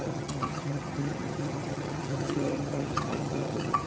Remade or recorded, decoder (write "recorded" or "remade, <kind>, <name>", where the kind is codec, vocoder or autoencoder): remade, vocoder, HiFi-GAN